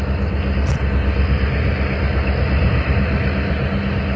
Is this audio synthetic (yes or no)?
no